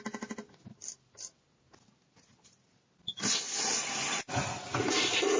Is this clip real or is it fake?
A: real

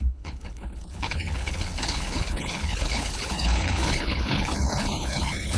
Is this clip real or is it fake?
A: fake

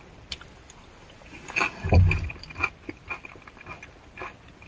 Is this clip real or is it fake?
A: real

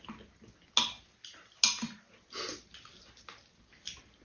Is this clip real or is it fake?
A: real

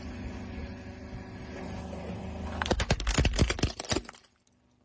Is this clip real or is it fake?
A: real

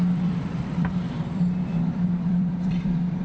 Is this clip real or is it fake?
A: fake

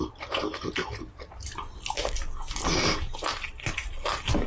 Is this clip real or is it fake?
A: real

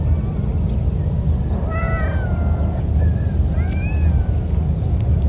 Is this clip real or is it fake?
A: real